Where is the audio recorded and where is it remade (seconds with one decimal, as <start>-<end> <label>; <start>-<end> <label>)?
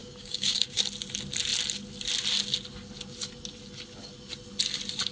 0.0-0.8 remade; 0.8-5.1 recorded